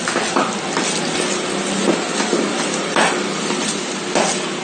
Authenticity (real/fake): real